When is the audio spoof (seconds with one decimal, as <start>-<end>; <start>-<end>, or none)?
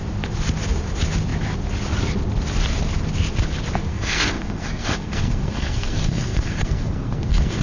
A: 3.9-7.6